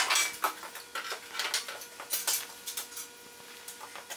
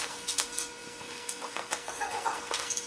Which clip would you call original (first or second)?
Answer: first